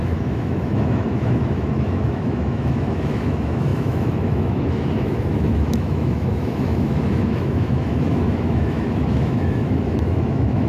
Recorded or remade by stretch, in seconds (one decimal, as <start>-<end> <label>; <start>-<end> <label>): 0.0-10.7 remade